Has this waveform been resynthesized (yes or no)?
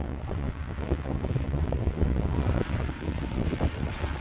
yes